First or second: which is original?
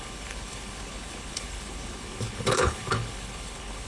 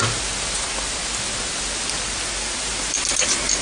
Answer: second